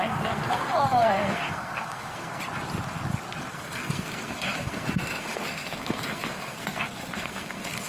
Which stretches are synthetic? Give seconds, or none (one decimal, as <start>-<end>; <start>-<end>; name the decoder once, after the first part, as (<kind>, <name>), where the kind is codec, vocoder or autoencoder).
0.0-2.4 (codec, SNAC); 3.5-7.9

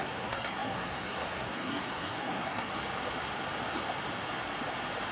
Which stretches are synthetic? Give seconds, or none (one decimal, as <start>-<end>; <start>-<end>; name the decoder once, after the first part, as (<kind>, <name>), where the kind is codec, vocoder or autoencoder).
0.0-2.7 (codec, SNAC)

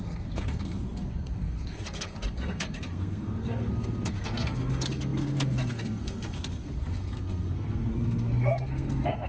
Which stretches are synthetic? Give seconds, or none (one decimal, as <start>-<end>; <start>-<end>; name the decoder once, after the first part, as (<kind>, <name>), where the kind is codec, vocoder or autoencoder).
0.0-9.3 (codec, SNAC)

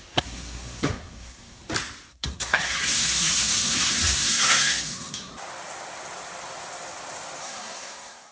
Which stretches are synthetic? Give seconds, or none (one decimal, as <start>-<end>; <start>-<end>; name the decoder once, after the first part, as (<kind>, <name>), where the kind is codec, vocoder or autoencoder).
0.0-1.6 (codec, SNAC); 2.1-5.3; 7.4-8.3

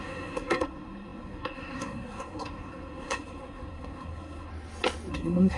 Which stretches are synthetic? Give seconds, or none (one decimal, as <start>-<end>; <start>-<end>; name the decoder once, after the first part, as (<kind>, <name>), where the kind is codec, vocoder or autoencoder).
0.0-4.5 (codec, SNAC); 5.1-5.6

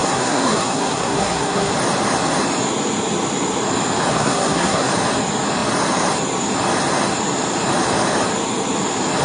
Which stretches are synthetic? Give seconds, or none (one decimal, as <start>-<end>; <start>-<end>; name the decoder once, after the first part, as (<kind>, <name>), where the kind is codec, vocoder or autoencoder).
0.0-1.7 (codec, SNAC); 4.1-4.9

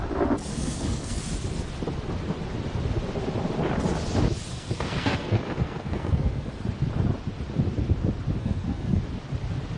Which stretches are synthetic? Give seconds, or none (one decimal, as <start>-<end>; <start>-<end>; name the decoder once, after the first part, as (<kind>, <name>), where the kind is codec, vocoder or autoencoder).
0.5-1.2 (codec, SNAC); 4.5-6.5; 8.4-9.0